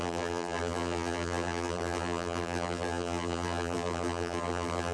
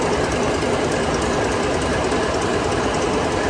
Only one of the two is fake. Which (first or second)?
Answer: first